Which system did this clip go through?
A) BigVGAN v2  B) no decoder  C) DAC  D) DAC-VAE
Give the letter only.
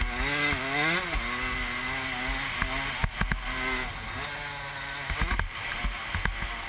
B